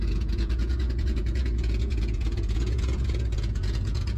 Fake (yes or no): yes